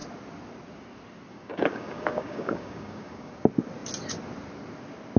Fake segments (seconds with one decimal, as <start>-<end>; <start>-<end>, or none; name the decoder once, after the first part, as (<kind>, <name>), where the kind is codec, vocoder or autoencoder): 1.3-3.3 (codec, DAC)